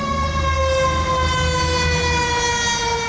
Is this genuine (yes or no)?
yes